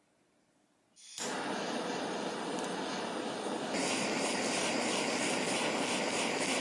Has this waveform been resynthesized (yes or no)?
no